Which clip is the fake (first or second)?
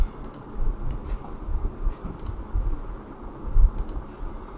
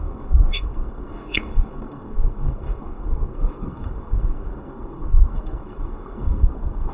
second